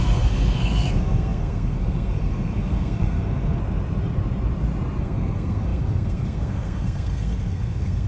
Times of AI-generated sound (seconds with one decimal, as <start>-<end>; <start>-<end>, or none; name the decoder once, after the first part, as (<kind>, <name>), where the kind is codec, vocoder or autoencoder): 0.0-3.6 (codec, SNAC); 5.0-8.1